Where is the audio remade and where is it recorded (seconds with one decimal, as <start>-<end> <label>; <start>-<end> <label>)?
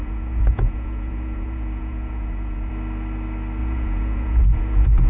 0.0-2.7 remade; 2.7-3.6 recorded; 3.6-5.1 remade